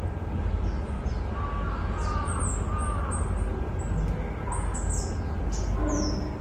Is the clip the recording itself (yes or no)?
yes